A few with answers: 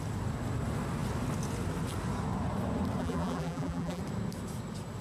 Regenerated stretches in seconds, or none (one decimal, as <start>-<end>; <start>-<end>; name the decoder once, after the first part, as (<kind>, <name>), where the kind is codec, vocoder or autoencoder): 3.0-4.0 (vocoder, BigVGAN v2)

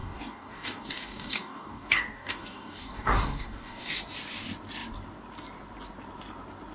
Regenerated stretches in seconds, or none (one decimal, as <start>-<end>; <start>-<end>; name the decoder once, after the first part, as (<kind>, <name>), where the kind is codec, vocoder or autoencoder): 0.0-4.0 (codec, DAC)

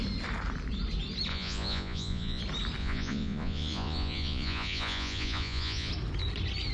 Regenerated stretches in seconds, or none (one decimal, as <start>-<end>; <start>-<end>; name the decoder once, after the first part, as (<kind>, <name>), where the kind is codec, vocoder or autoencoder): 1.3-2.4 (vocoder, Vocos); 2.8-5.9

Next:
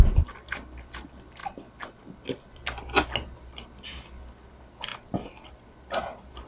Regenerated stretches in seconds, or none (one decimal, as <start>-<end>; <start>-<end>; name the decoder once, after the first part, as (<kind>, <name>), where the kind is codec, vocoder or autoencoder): none